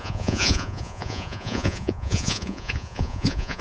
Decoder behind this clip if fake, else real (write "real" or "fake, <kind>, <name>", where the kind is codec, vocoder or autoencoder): fake, vocoder, Vocos